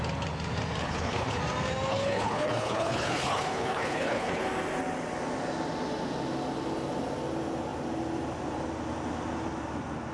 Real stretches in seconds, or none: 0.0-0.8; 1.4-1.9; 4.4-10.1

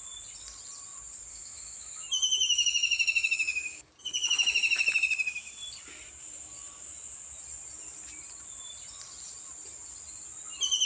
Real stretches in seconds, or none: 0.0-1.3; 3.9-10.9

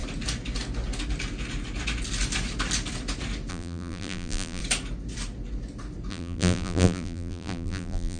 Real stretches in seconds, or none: 0.0-3.5; 4.6-6.1

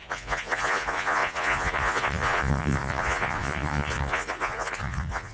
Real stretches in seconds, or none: none

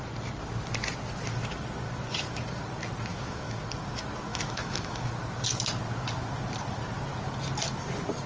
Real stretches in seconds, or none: 0.0-3.1; 3.6-4.3; 5.1-8.3

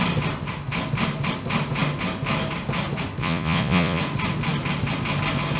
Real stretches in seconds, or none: 0.0-3.2; 4.0-5.6

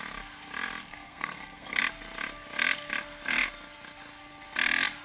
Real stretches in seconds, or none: 0.0-0.8; 1.8-5.0

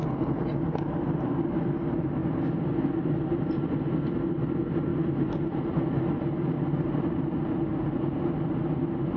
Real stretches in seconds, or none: 0.0-9.2